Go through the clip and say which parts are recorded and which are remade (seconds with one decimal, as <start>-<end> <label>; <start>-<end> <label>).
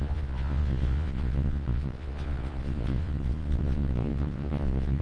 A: 0.0-5.0 remade